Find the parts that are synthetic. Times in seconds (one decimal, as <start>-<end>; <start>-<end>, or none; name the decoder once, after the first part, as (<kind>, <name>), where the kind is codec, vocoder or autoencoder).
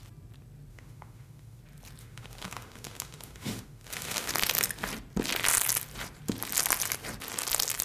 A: 0.7-1.6 (autoencoder, DAC-VAE); 2.0-4.3